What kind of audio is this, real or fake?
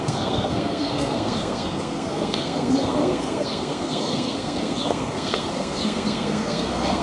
fake